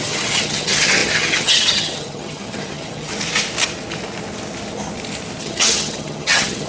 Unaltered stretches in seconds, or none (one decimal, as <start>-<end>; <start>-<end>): 3.1-5.4